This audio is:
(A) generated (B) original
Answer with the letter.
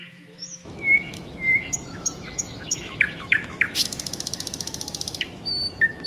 A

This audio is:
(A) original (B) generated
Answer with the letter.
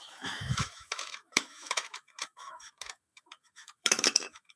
B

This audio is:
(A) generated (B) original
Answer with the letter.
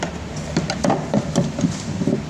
B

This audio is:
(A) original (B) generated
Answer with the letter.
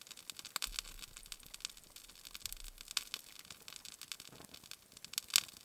A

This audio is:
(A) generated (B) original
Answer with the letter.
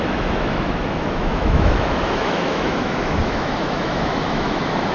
A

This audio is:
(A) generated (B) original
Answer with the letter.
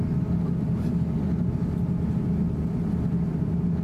B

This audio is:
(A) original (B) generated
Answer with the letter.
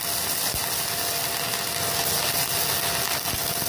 A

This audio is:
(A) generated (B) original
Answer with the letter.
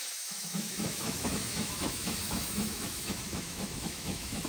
A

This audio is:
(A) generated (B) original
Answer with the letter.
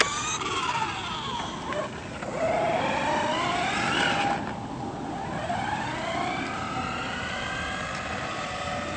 B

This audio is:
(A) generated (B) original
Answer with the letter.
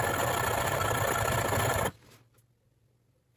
B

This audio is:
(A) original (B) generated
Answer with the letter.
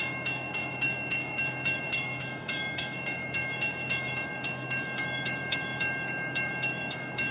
B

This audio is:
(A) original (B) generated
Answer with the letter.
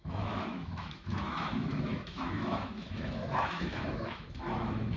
B